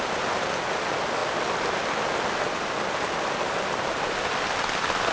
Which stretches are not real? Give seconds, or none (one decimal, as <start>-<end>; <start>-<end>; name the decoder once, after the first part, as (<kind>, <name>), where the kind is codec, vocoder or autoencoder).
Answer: none